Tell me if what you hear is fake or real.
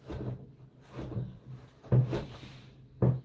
real